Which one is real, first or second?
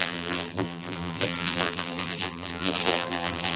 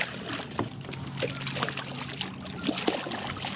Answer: second